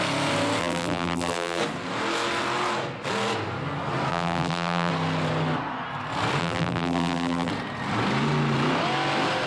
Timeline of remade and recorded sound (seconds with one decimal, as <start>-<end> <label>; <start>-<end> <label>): 0.0-0.6 recorded; 0.6-1.6 remade; 1.6-4.1 recorded; 4.1-4.9 remade; 4.9-6.4 recorded; 6.4-7.5 remade; 7.5-9.5 recorded